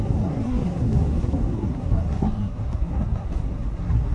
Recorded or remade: remade